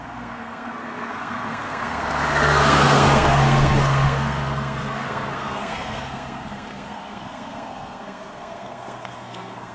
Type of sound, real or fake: fake